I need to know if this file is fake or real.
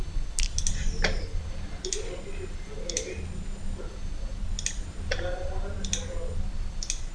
real